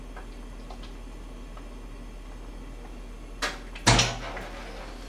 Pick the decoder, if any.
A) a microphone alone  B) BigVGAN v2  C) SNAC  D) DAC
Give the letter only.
A